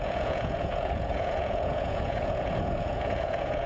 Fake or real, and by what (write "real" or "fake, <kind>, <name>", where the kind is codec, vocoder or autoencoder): fake, vocoder, Vocos